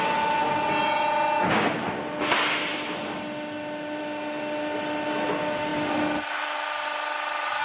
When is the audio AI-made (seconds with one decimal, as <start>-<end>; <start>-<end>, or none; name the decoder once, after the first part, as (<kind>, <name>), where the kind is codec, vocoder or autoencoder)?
none